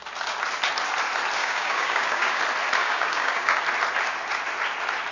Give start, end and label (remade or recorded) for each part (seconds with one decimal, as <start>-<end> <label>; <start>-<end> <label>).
0.0-1.4 recorded; 1.4-2.4 remade; 2.4-2.8 recorded; 2.8-3.6 remade; 3.6-5.1 recorded